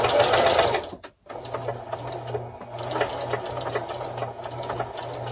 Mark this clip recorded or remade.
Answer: recorded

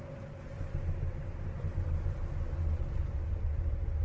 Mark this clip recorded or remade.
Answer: recorded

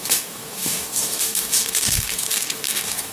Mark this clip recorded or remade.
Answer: remade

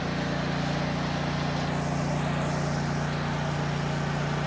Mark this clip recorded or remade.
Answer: recorded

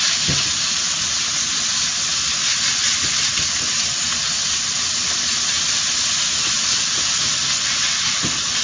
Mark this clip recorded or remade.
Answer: recorded